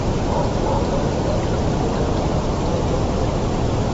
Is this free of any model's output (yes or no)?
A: yes